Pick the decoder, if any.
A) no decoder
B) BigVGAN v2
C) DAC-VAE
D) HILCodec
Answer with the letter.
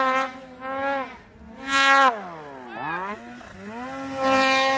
A